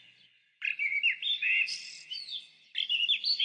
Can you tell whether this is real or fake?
real